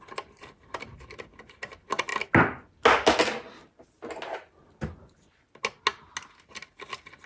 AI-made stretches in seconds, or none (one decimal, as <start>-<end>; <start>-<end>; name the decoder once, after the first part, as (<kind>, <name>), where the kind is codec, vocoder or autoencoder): none